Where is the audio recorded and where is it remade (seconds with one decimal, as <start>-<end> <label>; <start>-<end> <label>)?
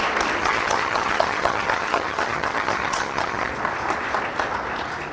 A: 0.0-0.4 recorded; 0.4-3.5 remade; 3.5-5.1 recorded